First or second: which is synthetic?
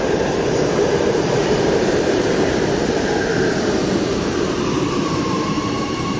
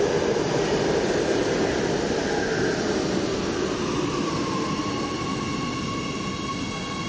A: first